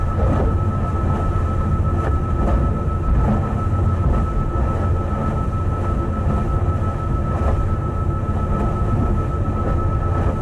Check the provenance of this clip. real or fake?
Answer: real